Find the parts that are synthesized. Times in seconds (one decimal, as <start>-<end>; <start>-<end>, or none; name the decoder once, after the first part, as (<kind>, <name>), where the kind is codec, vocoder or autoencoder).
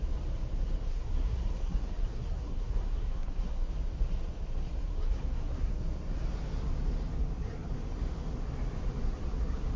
0.9-3.7 (codec, SNAC); 4.9-5.7